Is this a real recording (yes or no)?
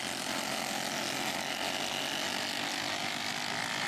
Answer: yes